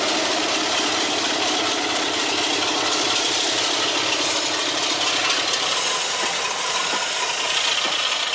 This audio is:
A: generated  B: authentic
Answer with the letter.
B